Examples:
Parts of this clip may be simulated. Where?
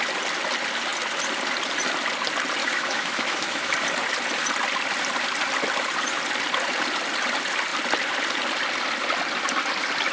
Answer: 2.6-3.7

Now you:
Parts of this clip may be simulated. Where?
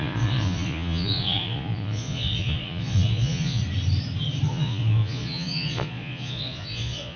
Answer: 0.0-3.6; 4.5-7.2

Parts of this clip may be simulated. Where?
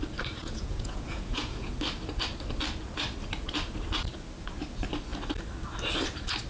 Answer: 0.4-1.7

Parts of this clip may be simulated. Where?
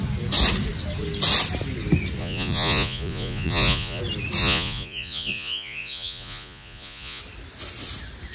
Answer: 2.2-4.0; 4.4-7.2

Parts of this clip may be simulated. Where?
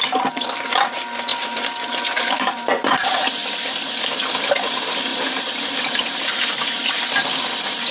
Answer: 1.3-3.2; 5.1-5.9